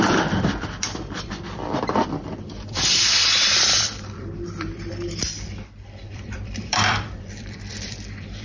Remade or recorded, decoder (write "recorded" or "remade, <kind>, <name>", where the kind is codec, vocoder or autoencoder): remade, vocoder, BigVGAN v2